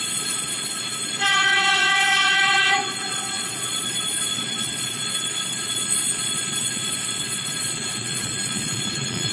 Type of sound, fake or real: fake